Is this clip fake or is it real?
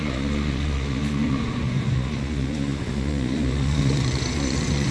fake